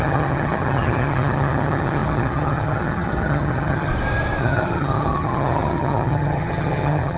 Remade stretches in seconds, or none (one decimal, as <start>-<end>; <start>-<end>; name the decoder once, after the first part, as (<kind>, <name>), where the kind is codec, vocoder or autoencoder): 0.0-3.9 (vocoder, HiFi-GAN); 4.4-7.2